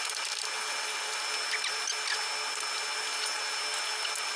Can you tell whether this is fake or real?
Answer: real